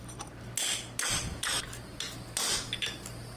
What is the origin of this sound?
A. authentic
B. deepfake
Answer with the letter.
A